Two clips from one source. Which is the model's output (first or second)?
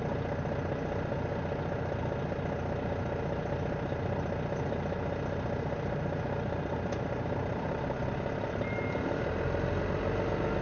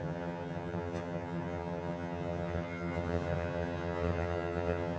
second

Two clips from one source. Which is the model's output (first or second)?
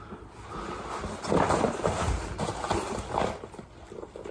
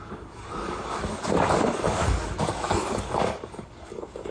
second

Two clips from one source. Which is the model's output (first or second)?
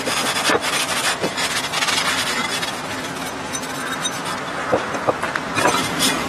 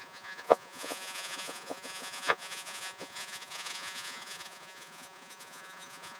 second